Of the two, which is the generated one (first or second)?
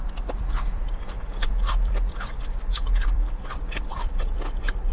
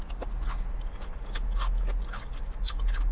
first